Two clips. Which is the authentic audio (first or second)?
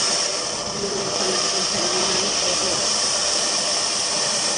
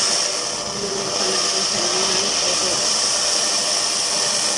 second